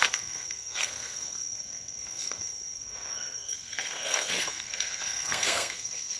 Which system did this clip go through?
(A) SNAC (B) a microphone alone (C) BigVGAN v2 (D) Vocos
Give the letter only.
A